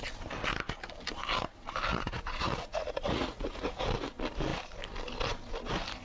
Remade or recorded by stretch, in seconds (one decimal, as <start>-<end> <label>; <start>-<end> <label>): 0.0-1.9 recorded; 1.9-3.8 remade; 3.8-6.0 recorded